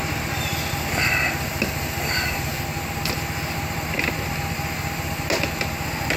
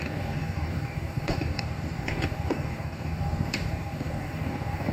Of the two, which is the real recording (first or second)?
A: first